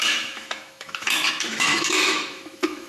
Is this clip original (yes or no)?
no